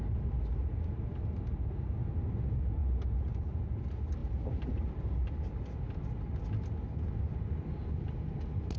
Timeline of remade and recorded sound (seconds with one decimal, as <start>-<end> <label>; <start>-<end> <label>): 0.0-8.8 recorded